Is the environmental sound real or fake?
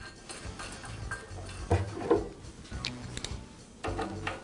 real